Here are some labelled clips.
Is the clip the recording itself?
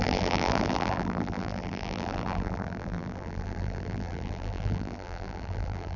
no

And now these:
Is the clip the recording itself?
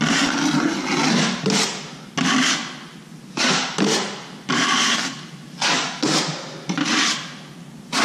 yes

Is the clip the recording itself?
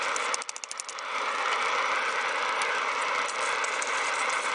yes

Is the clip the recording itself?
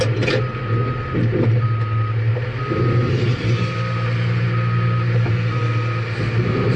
yes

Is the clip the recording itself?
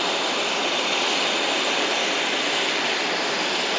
yes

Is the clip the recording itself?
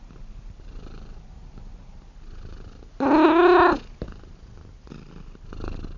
yes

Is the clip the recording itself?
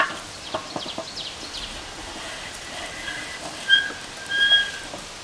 yes